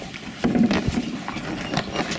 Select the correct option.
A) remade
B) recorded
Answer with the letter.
B